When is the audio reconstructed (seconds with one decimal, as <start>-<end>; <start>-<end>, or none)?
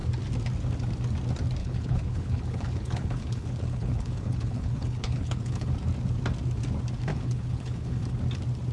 1.6-5.7; 7.1-8.2